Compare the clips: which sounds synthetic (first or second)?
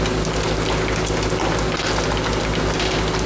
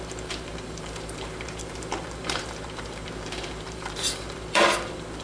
second